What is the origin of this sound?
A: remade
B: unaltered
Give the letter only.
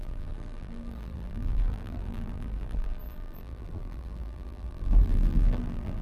A